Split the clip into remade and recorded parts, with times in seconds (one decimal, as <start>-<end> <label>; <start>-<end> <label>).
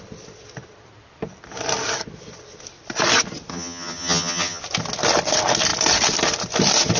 0.0-3.5 recorded; 3.5-4.6 remade; 4.6-7.0 recorded